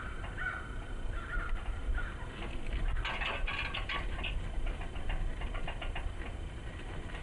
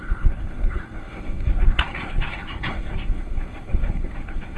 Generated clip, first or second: second